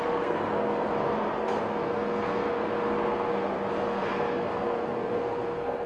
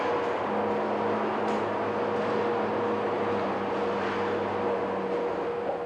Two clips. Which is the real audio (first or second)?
second